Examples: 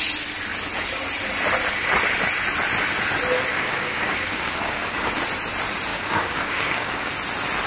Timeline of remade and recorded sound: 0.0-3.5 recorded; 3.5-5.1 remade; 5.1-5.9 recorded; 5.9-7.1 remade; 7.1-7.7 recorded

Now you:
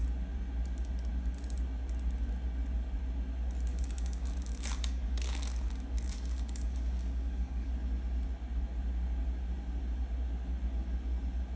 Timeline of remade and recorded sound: 0.0-3.7 recorded; 3.7-7.7 remade; 7.7-11.6 recorded